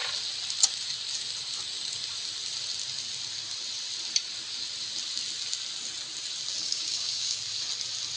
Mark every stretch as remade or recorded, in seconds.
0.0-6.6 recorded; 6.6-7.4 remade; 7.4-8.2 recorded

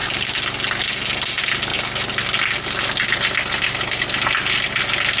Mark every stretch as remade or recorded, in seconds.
0.0-5.2 recorded

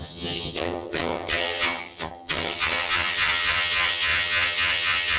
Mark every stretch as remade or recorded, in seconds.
0.0-5.2 remade

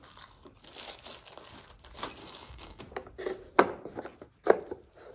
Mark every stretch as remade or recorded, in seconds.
0.0-2.2 recorded; 2.2-2.8 remade; 2.8-5.1 recorded

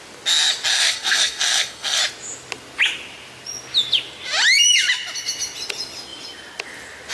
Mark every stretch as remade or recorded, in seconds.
0.0-0.7 recorded; 0.7-2.0 remade; 2.0-7.1 recorded